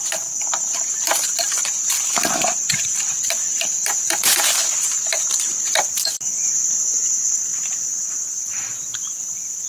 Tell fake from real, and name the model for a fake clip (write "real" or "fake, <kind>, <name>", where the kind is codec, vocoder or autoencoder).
fake, vocoder, BigVGAN v2